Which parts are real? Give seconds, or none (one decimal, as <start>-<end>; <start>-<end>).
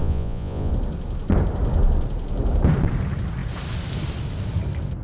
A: 0.7-5.0